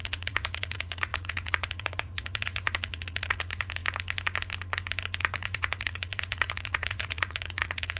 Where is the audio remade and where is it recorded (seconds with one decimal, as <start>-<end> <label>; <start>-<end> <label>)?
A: 0.0-3.8 remade; 3.8-5.2 recorded; 5.2-8.0 remade